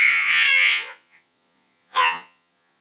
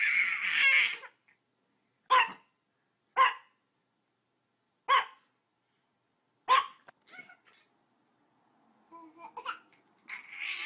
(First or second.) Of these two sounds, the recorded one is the second